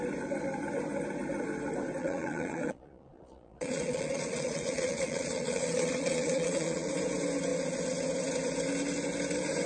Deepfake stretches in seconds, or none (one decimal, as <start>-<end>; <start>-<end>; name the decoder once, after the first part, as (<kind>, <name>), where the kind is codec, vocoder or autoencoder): 2.0-6.9 (vocoder, Vocos)